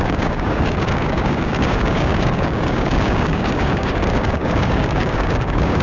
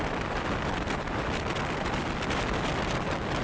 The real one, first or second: second